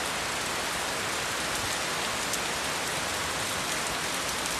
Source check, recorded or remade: recorded